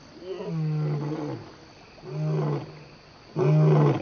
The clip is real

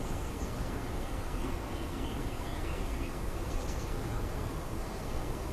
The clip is fake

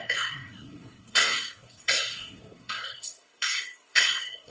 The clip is fake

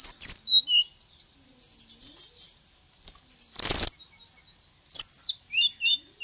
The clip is real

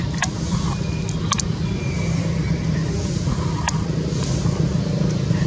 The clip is real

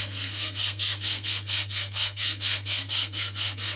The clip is fake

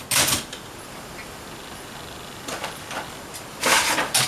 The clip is real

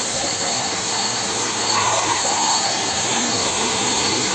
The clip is fake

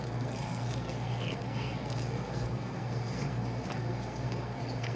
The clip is fake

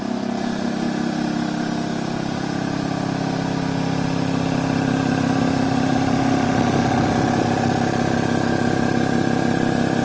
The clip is real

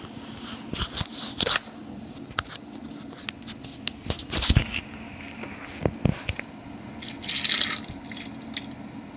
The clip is real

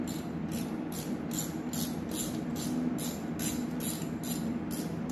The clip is real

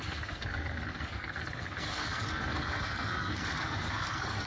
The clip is fake